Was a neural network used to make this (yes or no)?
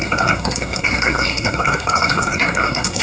yes